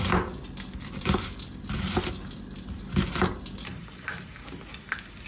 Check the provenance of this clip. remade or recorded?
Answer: recorded